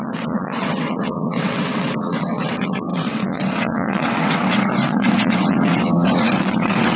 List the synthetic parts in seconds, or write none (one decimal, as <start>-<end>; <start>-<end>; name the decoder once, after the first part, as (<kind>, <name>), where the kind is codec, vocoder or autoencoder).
0.0-7.0 (vocoder, WaveNeXt)